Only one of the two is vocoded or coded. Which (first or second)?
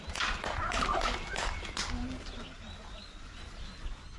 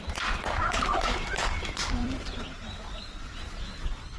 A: second